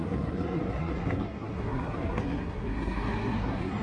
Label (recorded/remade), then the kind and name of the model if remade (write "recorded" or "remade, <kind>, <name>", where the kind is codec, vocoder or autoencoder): remade, codec, SNAC